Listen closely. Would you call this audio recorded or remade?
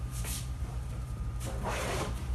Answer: remade